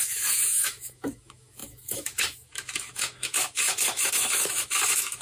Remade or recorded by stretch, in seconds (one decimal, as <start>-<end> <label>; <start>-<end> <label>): 0.0-5.2 remade